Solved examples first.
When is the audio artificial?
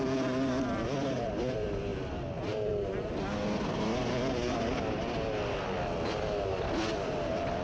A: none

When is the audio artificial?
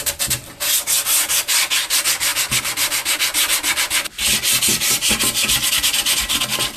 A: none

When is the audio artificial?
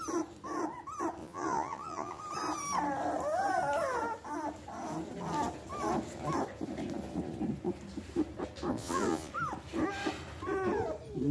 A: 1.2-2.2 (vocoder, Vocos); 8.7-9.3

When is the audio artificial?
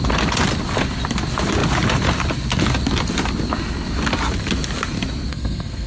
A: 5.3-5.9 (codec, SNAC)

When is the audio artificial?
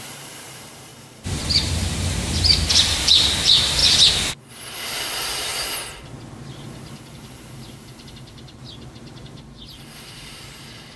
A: 0.0-3.8 (vocoder, BigVGAN v2); 4.5-5.5; 7.1-11.0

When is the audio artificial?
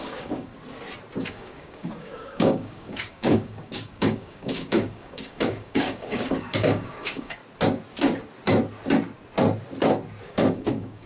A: 0.0-0.5 (codec, DAC); 1.3-7.4; 10.2-11.1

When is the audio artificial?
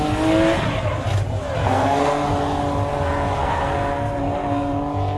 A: 1.6-2.3 (codec, SNAC); 3.4-4.8